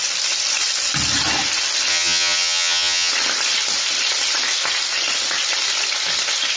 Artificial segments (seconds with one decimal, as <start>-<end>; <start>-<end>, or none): 1.9-3.1